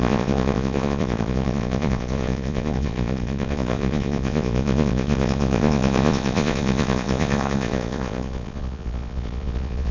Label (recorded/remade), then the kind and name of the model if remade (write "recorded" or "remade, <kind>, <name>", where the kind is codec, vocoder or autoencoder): remade, vocoder, Vocos